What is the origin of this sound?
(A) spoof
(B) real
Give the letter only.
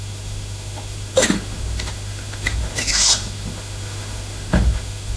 A